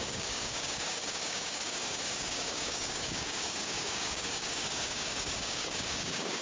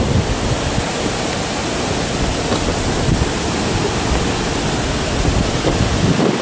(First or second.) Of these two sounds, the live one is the second